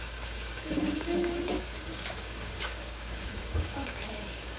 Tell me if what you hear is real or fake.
fake